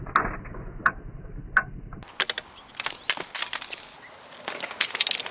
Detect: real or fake real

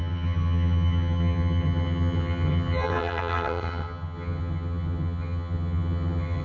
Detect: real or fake fake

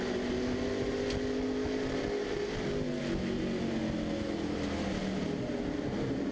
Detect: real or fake real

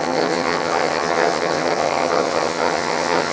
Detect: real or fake fake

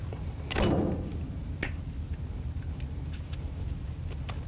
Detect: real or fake real